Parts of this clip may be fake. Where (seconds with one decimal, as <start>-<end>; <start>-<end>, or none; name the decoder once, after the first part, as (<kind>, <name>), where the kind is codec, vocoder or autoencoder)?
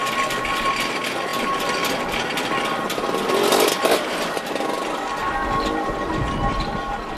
none